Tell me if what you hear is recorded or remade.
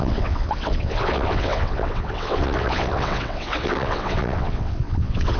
remade